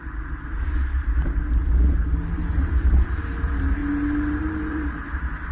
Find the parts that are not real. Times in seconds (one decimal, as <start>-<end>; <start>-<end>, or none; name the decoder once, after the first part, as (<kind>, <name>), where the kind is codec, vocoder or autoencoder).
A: 0.0-1.4 (vocoder, BigVGAN v2); 2.1-3.8; 4.4-5.5